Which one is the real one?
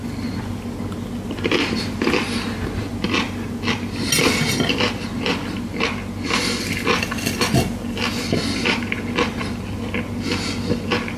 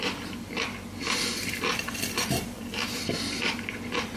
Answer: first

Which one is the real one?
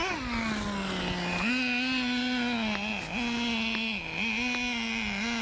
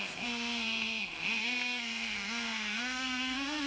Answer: first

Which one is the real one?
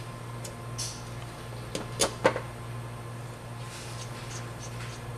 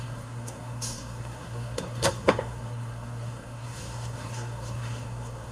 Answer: first